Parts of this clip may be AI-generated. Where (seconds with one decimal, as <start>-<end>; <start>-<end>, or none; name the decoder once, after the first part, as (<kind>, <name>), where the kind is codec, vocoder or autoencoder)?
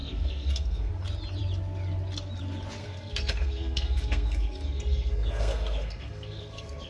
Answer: 0.0-0.9 (codec, SNAC); 2.8-6.9